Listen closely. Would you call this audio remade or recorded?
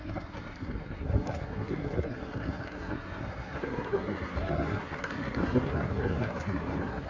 remade